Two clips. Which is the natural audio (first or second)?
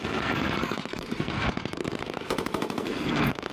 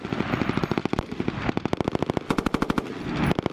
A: second